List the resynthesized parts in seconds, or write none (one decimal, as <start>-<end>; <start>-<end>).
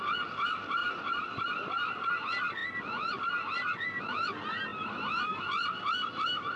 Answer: 0.8-2.1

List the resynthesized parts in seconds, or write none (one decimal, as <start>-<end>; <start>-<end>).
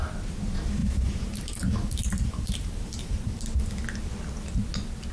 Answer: 0.8-3.3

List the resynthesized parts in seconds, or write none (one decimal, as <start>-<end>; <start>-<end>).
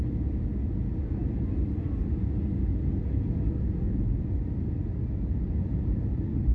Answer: none